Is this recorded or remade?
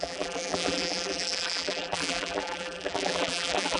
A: remade